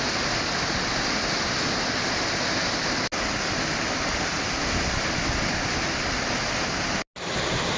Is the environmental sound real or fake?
real